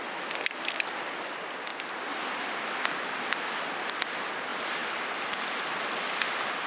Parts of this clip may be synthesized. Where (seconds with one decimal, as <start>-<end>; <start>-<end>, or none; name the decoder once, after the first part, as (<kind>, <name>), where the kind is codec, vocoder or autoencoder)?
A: 4.5-6.7 (vocoder, BigVGAN v2)